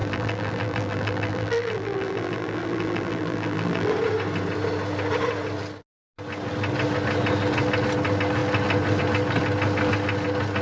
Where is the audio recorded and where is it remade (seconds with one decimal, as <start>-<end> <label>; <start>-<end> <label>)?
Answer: 0.0-3.9 remade; 3.9-10.6 recorded